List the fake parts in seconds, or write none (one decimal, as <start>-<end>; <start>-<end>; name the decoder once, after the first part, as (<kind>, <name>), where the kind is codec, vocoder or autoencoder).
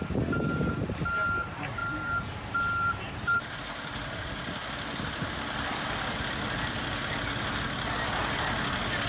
1.8-3.4 (vocoder, BigVGAN v2)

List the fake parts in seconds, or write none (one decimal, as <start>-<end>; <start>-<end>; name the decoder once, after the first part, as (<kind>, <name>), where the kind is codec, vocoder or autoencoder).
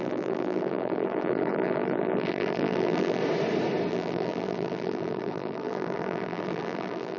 0.0-3.2 (vocoder, BigVGAN v2); 3.9-7.2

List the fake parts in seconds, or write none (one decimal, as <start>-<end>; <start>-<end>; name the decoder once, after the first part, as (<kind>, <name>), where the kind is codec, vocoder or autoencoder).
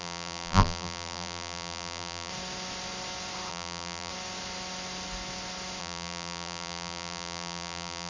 0.0-2.3 (vocoder, BigVGAN v2); 3.5-4.1; 5.8-8.1